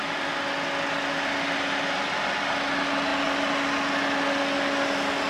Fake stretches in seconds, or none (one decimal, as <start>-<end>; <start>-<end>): none